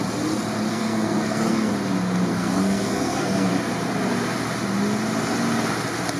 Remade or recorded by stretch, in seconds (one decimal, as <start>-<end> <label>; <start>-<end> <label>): 0.0-0.7 recorded; 0.7-1.7 remade; 1.7-2.3 recorded; 2.3-3.5 remade; 3.5-6.2 recorded